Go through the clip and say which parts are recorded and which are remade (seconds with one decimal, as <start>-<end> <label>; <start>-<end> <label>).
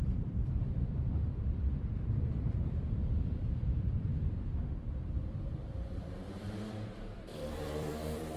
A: 0.0-8.4 remade